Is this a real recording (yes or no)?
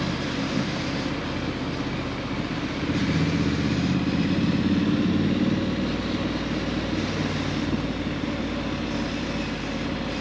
yes